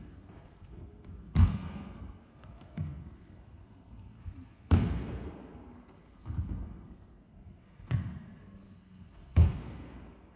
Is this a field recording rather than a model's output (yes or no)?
no